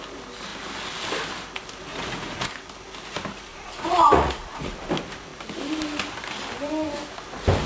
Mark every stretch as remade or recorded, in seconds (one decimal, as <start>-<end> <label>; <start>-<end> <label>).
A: 0.0-1.9 recorded; 1.9-2.5 remade; 2.5-3.5 recorded; 3.5-4.7 remade; 4.7-7.7 recorded